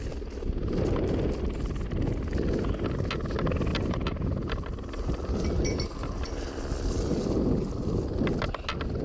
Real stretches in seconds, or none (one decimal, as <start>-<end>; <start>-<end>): 0.0-3.7; 6.6-9.0